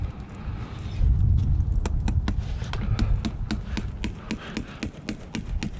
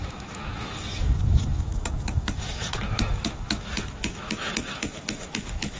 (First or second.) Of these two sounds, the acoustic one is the first